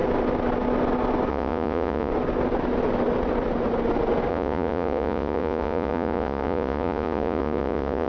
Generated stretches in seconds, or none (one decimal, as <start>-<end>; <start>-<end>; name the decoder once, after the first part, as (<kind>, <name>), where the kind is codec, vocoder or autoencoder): 1.3-2.1 (vocoder, Vocos); 4.3-8.1